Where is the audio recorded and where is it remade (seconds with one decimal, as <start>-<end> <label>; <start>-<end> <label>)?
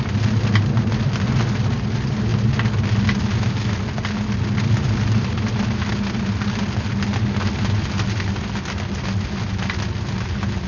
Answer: 0.0-10.7 recorded